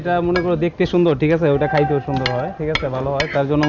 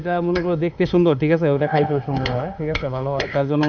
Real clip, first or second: first